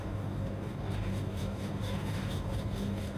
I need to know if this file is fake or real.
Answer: fake